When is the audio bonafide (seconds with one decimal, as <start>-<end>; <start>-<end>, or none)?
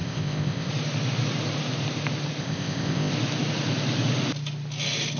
0.7-2.4; 3.1-5.2